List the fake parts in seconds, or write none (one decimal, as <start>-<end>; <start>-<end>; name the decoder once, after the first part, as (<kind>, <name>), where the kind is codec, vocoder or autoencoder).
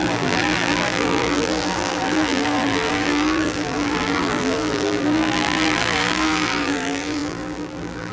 0.0-8.1 (vocoder, BigVGAN v2)